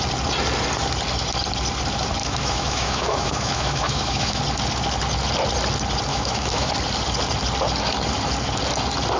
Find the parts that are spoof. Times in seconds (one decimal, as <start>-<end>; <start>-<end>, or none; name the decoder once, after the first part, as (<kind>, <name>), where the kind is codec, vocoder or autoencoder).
2.2-4.4 (autoencoder, DAC-VAE); 6.1-6.7